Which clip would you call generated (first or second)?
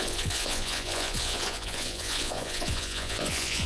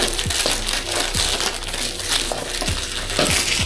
first